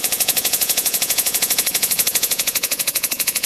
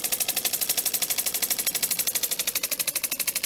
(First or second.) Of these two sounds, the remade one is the first